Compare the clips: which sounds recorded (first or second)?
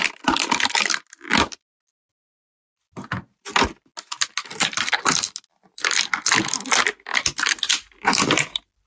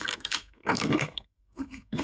first